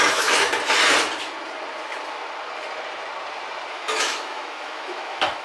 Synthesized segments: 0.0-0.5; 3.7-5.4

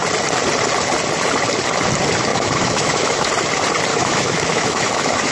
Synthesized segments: 2.3-3.3; 3.9-5.3

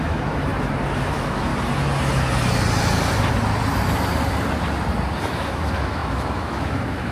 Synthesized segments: 0.0-0.5; 1.1-1.5; 5.2-7.1

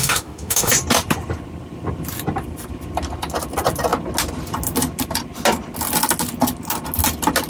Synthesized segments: 0.0-0.7